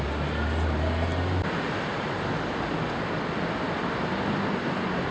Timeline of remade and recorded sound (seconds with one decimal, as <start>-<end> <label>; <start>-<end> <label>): 0.0-5.1 recorded